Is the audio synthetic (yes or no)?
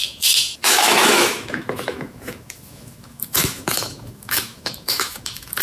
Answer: yes